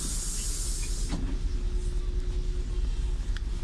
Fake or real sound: real